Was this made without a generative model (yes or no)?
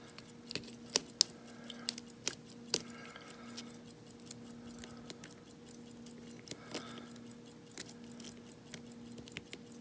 yes